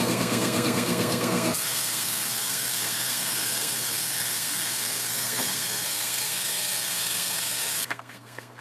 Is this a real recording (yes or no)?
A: no